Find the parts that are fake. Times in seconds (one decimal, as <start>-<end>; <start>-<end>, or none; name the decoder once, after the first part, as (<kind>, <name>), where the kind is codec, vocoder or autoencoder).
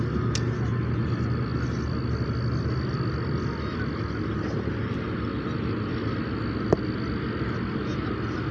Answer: none